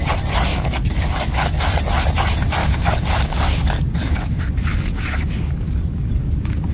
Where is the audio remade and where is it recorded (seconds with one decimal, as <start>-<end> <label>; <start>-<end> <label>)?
0.0-0.5 recorded; 0.5-1.6 remade; 1.6-2.6 recorded; 2.6-6.7 remade